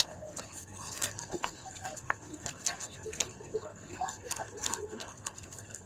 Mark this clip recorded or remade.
remade